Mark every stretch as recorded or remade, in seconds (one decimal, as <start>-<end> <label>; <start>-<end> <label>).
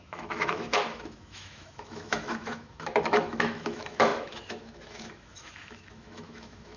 0.0-6.8 remade